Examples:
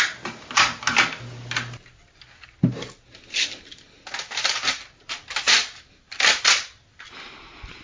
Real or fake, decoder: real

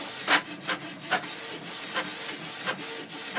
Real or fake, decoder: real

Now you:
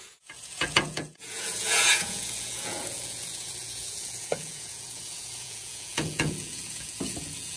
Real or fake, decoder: fake, vocoder, Vocos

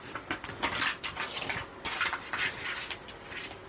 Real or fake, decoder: real